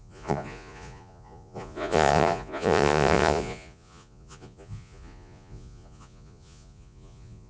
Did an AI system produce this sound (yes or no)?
yes